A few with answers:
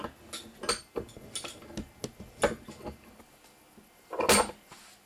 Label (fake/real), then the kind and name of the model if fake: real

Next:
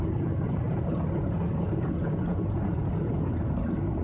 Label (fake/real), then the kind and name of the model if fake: real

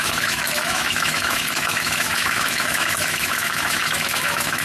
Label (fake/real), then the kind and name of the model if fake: fake, autoencoder, DAC-VAE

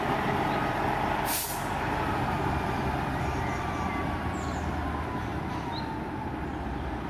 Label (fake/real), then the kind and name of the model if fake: real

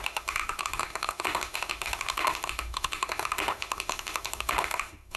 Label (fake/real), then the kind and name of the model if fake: fake, autoencoder, DAC-VAE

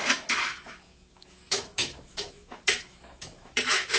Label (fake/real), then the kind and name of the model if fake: fake, autoencoder, DAC-VAE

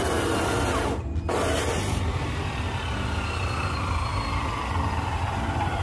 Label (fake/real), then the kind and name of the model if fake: real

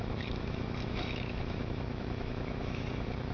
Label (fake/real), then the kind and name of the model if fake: fake, autoencoder, DAC-VAE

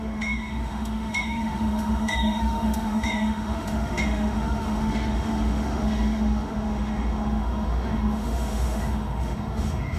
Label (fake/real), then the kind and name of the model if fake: fake, autoencoder, DAC-VAE